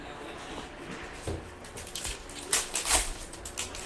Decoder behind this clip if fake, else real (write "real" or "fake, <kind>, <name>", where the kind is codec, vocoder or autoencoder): real